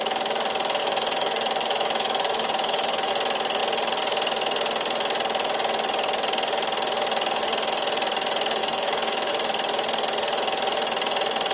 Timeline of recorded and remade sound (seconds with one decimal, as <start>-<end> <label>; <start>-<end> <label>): 0.0-0.8 recorded; 0.8-3.1 remade; 3.1-8.6 recorded; 8.6-9.3 remade; 9.3-11.5 recorded